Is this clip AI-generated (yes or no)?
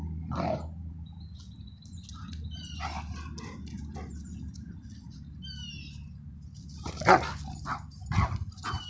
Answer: no